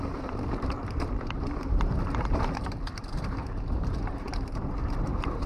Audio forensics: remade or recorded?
remade